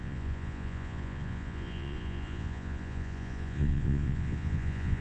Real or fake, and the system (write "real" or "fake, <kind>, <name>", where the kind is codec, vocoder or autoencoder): fake, vocoder, Vocos